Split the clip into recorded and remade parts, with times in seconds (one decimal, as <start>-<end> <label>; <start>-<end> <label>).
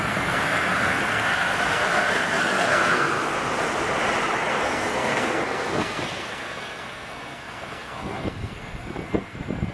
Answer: 0.0-3.3 remade; 3.3-4.5 recorded; 4.5-9.7 remade